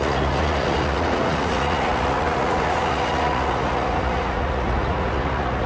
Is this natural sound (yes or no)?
no